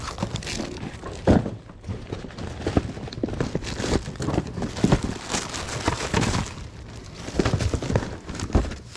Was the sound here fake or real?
real